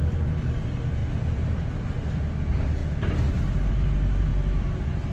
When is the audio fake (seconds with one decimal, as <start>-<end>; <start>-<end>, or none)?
none